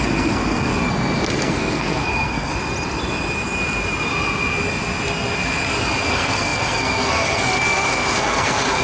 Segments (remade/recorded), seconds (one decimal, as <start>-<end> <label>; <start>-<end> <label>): 0.0-0.7 remade; 0.7-1.3 recorded; 1.3-2.5 remade; 2.5-6.1 recorded; 6.1-8.8 remade